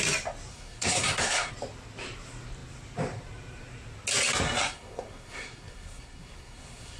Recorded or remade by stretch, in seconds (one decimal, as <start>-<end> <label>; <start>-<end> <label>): 0.0-0.5 recorded; 0.5-1.5 remade; 1.5-4.6 recorded; 4.6-7.0 remade